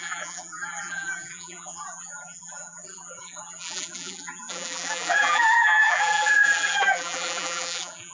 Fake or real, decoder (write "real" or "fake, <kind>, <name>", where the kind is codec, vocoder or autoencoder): fake, vocoder, BigVGAN v2